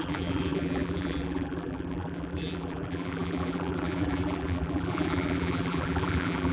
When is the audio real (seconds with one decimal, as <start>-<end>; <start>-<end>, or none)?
none